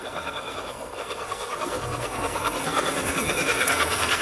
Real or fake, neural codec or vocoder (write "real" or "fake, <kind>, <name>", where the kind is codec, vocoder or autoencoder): fake, codec, SNAC